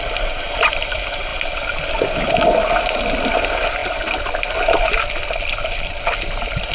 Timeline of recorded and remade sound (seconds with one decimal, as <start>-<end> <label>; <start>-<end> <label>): 0.0-6.7 recorded